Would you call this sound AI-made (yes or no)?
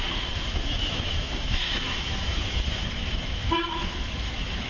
yes